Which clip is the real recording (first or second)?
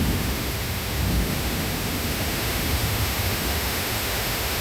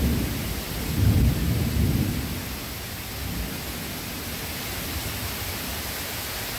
second